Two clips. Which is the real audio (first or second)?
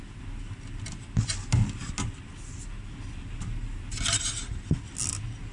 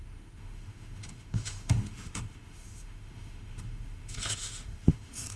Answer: first